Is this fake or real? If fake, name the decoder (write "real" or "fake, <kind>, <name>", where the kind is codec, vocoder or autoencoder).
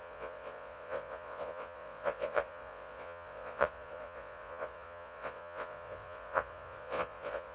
fake, vocoder, Vocos